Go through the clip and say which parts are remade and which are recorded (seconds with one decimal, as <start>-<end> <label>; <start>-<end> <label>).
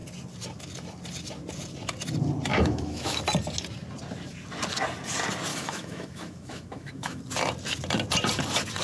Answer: 0.0-2.5 recorded; 2.5-3.2 remade; 3.2-5.5 recorded; 5.5-7.2 remade; 7.2-8.8 recorded